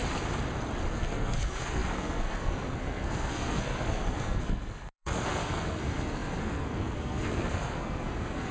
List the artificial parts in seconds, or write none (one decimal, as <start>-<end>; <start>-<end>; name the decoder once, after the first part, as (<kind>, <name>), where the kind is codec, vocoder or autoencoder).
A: 0.9-8.5 (codec, SNAC)